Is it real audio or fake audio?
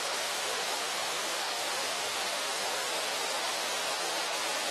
fake